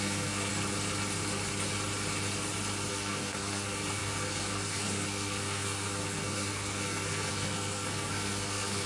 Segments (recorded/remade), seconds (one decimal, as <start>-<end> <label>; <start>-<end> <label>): 0.0-0.5 remade; 0.5-2.9 recorded; 2.9-8.9 remade